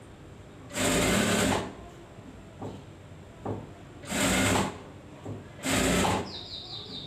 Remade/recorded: recorded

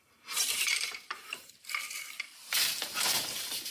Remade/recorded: remade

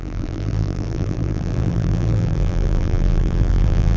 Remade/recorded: remade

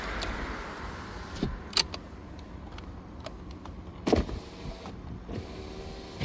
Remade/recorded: recorded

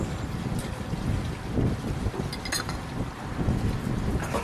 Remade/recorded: recorded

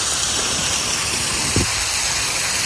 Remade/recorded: remade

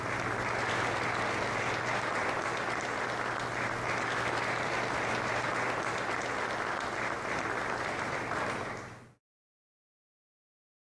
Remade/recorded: recorded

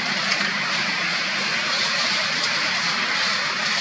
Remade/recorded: remade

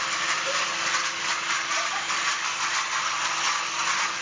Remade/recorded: recorded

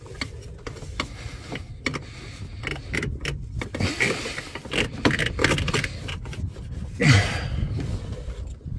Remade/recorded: recorded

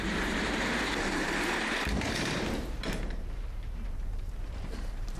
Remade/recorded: remade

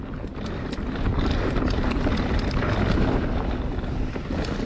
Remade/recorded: recorded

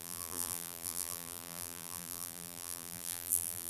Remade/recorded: remade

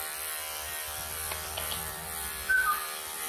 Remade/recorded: remade